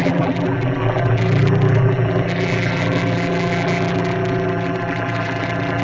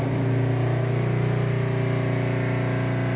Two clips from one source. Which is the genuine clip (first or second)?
second